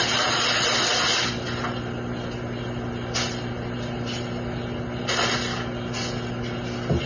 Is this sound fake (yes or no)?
no